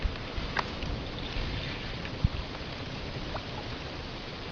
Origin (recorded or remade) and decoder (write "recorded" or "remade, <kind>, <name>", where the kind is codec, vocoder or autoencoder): recorded